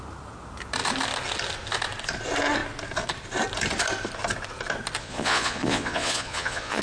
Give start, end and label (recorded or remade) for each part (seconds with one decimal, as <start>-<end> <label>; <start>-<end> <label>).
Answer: 0.0-5.0 recorded; 5.0-6.8 remade